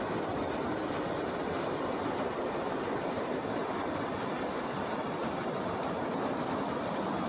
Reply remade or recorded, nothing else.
recorded